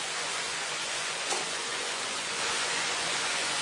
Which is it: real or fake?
fake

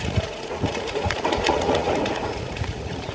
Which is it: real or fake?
fake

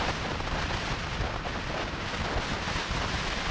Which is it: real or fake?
real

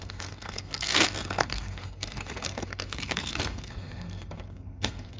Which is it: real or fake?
fake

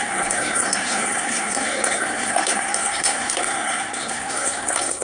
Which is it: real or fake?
fake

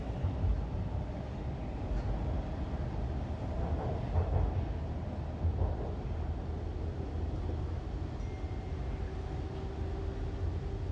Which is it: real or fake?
real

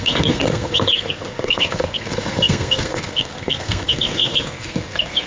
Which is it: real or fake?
fake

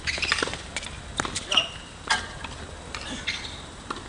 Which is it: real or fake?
real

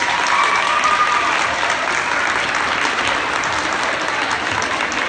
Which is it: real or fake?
real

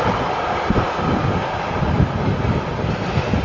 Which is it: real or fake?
real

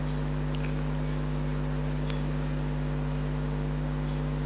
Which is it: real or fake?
real